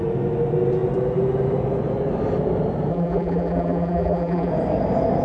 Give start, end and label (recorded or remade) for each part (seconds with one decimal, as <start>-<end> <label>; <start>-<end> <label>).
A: 0.0-2.9 recorded; 2.9-4.5 remade; 4.5-5.2 recorded